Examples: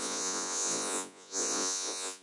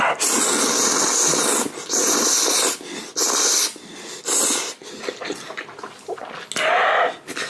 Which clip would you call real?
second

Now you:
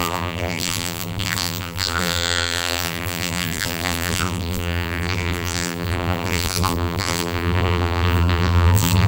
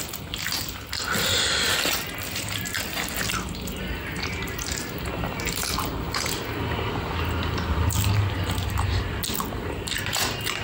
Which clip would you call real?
second